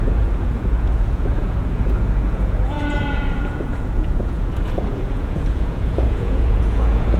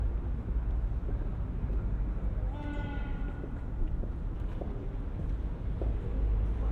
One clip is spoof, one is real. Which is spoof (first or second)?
first